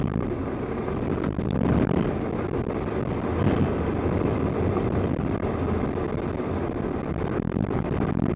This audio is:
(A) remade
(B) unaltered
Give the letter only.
B